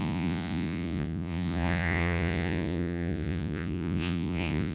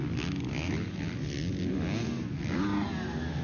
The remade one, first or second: first